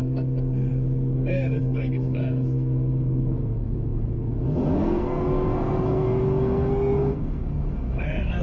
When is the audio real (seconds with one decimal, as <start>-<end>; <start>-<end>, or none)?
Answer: none